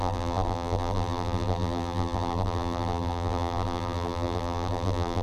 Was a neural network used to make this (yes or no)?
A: yes